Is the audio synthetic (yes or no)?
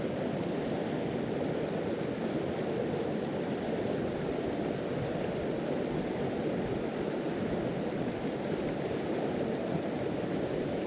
no